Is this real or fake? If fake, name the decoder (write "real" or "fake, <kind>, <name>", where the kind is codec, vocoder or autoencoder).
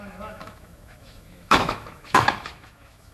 fake, autoencoder, DAC-VAE